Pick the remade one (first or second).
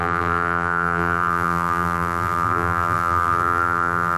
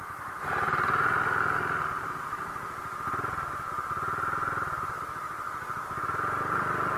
first